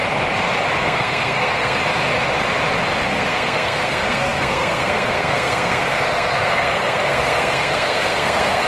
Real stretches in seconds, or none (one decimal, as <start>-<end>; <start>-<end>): 0.0-0.8; 1.8-3.1